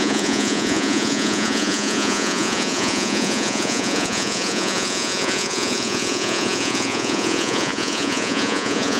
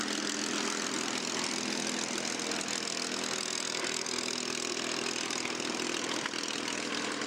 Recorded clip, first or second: second